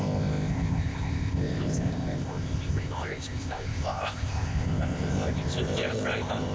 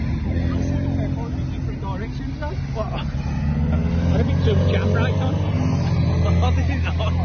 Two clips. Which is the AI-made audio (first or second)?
first